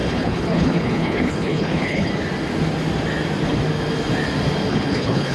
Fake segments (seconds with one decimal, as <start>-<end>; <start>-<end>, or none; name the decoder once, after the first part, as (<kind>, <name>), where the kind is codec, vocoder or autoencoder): 0.0-2.1 (codec, HILCodec); 4.7-5.3